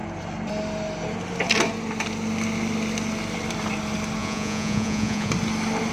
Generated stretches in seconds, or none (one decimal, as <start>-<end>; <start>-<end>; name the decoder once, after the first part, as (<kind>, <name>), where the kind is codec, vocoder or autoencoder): 4.2-5.3 (vocoder, Vocos)